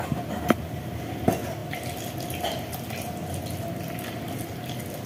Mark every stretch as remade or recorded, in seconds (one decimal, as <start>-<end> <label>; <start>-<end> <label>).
0.0-5.1 recorded